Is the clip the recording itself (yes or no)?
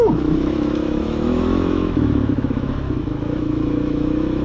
no